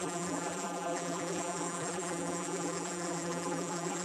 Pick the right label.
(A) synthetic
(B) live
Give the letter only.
A